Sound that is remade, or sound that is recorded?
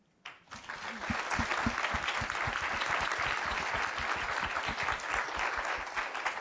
recorded